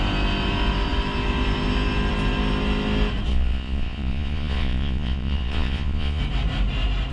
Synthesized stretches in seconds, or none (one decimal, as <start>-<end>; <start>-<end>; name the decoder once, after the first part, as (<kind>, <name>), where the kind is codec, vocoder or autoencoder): 3.3-6.2 (vocoder, Vocos)